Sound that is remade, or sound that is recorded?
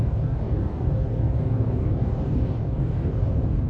remade